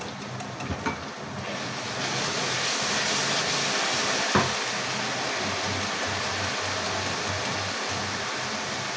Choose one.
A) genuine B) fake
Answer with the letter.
A